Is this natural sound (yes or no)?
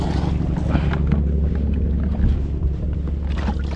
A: yes